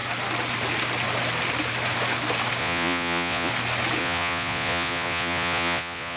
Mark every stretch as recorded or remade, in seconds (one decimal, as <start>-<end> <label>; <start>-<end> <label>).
0.0-2.6 recorded; 2.6-3.5 remade; 3.5-4.0 recorded; 4.0-6.2 remade